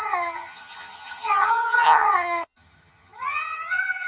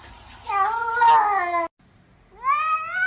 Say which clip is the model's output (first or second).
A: first